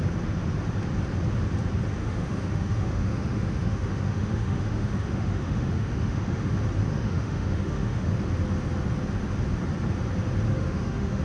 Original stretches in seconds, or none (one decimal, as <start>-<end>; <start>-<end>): 0.0-2.0; 6.5-6.9; 8.1-10.5